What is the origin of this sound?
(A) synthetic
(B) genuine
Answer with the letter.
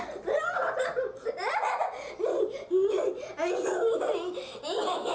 B